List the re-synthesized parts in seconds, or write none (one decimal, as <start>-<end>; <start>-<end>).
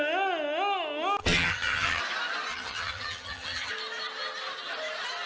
1.2-2.0; 2.5-3.7